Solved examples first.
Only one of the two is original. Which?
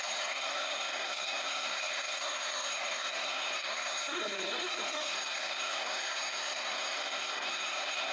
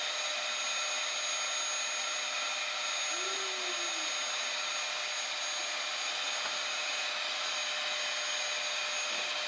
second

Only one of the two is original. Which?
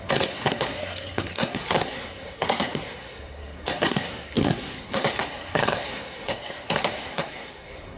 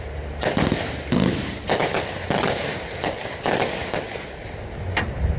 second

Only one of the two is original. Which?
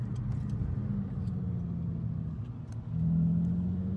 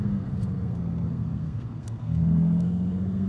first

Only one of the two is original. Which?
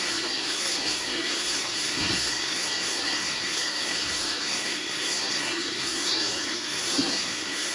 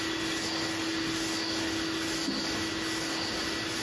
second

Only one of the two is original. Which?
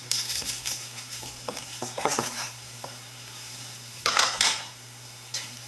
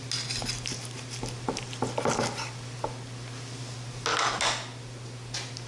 second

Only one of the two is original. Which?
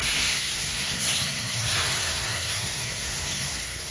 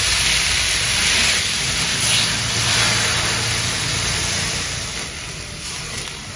second